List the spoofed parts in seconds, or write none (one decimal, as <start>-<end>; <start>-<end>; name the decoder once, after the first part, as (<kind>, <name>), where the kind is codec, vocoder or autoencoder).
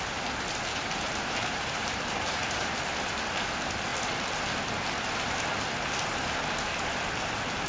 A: 0.7-2.8 (vocoder, BigVGAN v2)